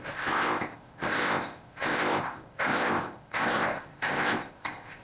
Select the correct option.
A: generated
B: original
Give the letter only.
A